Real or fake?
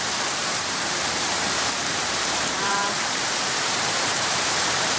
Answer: fake